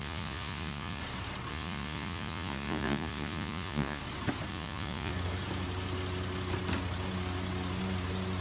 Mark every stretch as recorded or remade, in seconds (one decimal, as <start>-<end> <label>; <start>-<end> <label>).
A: 0.0-1.0 remade; 1.0-1.5 recorded; 1.5-4.0 remade; 4.0-4.5 recorded; 4.5-5.1 remade; 5.1-8.4 recorded